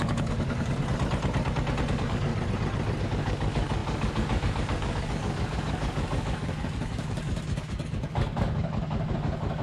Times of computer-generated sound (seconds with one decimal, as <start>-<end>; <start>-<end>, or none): 0.0-0.8; 1.9-2.3; 3.0-9.6